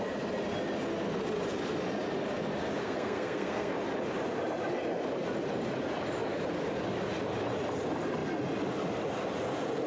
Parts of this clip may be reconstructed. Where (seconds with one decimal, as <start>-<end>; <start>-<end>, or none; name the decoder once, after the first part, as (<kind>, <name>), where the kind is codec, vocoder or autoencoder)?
2.8-3.7 (codec, SNAC)